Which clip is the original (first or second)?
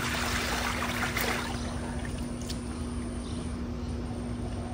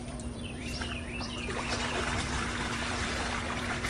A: first